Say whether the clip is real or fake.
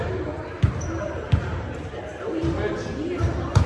fake